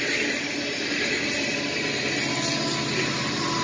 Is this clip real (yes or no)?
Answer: yes